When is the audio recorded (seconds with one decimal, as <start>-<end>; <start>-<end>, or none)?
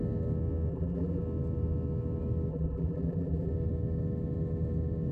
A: 0.0-0.7; 1.2-2.5; 3.5-5.1